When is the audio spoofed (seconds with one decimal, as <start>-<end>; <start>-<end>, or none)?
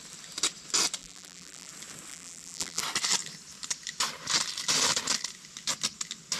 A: 1.0-1.7; 2.1-2.8